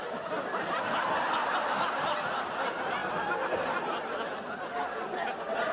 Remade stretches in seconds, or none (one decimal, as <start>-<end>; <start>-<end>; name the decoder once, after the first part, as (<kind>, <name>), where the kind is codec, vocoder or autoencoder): none

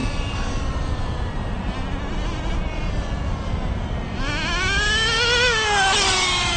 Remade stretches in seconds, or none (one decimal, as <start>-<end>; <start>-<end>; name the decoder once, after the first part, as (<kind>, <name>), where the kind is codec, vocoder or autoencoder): 0.0-1.3 (vocoder, BigVGAN v2)

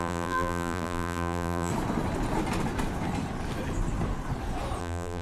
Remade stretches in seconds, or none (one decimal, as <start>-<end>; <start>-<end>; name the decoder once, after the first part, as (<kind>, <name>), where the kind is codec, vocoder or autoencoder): 0.0-1.7 (vocoder, BigVGAN v2); 4.8-5.2